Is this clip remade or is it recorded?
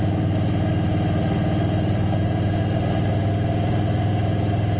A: recorded